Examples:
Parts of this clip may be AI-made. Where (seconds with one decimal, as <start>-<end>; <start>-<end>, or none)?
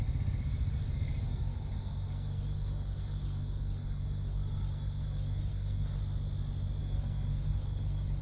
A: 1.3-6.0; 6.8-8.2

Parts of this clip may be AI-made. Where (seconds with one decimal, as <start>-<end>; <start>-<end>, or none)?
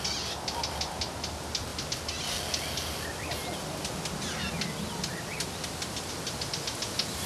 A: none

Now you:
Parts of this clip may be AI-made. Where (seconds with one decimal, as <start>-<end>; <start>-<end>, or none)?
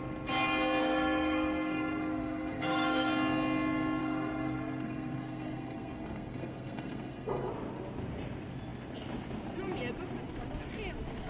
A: 0.8-3.1; 4.0-7.5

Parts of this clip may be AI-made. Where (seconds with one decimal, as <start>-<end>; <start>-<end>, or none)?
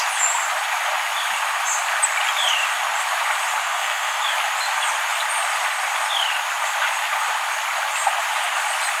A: 3.6-4.2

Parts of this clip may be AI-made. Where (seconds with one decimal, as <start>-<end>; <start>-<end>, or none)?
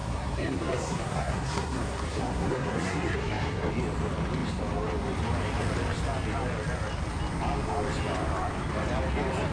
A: 0.0-3.7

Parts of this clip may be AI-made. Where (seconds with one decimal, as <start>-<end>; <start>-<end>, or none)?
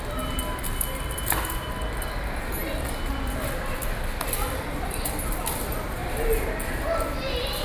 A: none